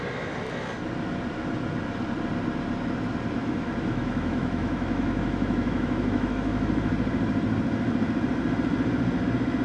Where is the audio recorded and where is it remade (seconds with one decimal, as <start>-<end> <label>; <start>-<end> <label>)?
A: 0.0-3.4 recorded; 3.4-6.9 remade; 6.9-9.6 recorded